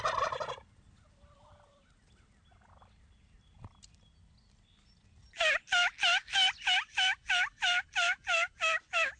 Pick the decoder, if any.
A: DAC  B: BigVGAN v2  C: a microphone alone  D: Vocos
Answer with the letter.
C